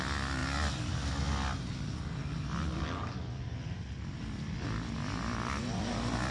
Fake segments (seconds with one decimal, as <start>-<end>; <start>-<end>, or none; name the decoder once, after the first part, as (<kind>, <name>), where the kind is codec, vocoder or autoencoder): none